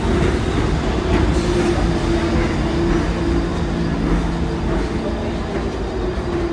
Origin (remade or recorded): recorded